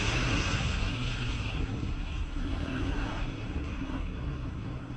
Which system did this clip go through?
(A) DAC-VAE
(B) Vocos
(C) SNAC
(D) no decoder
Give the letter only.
C